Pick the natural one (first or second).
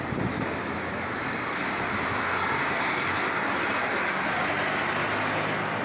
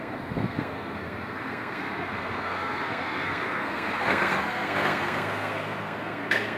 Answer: first